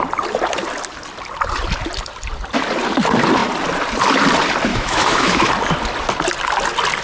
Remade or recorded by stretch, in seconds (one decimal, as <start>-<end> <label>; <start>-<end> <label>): 0.0-4.7 recorded; 4.7-5.5 remade; 5.5-7.0 recorded